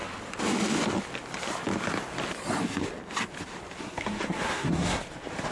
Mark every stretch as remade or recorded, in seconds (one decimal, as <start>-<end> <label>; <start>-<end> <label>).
0.0-3.8 recorded; 3.8-5.0 remade; 5.0-5.5 recorded